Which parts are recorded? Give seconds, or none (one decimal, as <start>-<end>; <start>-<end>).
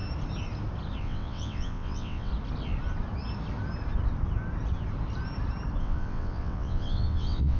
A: 0.0-1.0; 2.3-5.8